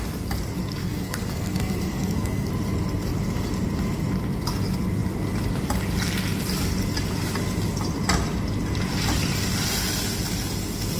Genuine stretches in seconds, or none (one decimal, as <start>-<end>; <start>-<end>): 0.0-0.8; 2.5-11.0